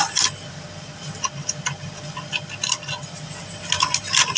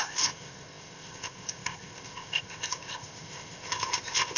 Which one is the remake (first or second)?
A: second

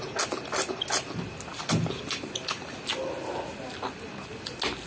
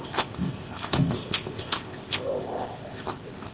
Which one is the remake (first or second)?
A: second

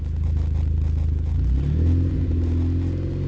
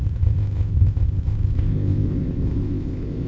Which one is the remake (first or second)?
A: second